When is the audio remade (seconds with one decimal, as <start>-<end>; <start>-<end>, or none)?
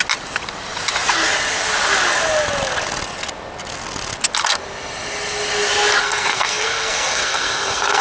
6.0-8.0